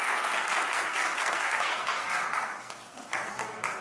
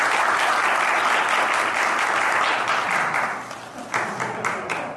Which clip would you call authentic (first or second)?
second